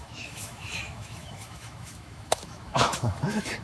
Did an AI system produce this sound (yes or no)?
yes